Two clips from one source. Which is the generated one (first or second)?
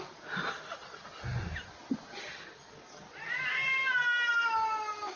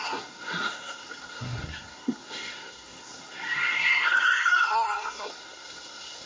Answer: second